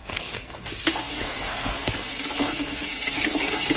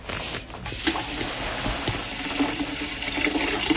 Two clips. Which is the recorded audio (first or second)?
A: second